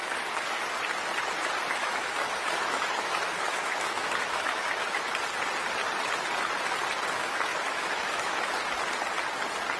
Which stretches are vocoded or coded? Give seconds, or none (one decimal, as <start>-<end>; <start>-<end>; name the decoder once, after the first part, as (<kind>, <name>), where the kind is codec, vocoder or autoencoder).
1.8-5.1 (autoencoder, DAC-VAE); 7.5-8.5